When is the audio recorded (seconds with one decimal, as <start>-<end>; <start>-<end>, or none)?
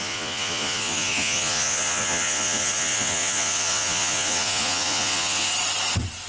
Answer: 5.5-6.3